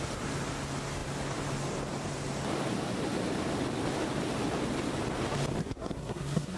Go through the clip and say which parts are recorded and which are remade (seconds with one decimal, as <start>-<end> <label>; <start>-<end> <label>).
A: 0.0-5.6 recorded; 5.6-6.6 remade